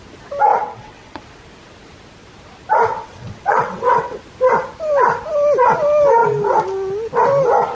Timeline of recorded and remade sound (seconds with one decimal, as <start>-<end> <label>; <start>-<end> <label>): 0.0-0.5 recorded; 0.5-1.2 remade; 1.2-2.9 recorded; 2.9-4.2 remade; 4.2-7.7 recorded